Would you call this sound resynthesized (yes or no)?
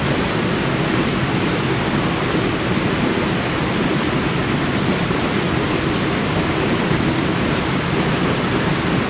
no